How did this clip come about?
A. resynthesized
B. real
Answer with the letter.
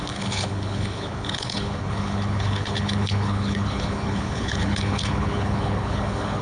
A